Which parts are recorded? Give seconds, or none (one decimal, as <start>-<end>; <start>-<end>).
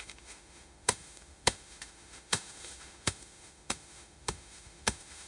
none